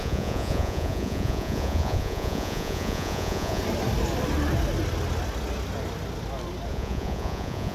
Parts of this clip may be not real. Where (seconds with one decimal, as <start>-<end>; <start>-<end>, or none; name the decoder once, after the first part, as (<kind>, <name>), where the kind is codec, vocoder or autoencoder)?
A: 0.0-3.6 (vocoder, Vocos); 6.7-7.7